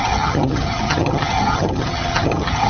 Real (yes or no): no